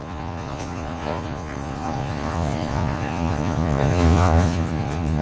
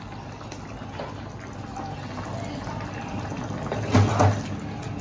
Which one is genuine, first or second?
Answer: second